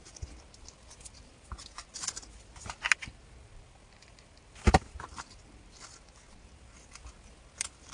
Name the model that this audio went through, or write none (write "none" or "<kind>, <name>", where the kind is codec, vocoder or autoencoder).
none